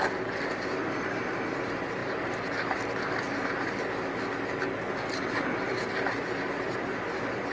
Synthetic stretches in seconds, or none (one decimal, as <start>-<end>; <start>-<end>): none